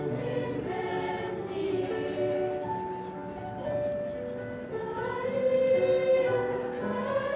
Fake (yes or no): no